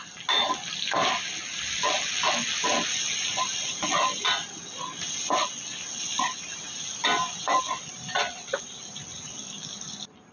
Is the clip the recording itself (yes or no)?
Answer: yes